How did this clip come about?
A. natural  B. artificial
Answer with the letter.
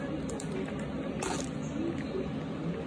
A